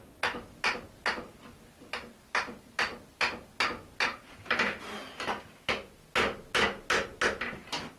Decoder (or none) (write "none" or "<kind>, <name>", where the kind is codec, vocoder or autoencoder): none